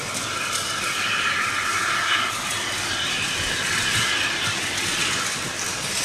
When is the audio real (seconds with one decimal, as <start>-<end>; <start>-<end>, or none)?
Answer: 0.0-6.0